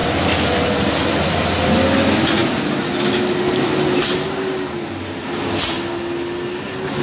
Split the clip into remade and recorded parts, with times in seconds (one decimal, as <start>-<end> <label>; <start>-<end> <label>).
0.0-7.0 recorded